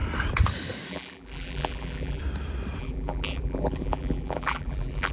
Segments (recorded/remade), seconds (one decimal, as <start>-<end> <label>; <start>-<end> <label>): 0.0-0.9 recorded; 0.9-2.2 remade; 2.2-2.8 recorded; 2.8-5.1 remade